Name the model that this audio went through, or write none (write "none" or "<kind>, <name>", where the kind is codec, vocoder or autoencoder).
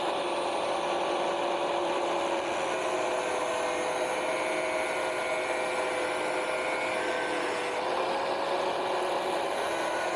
none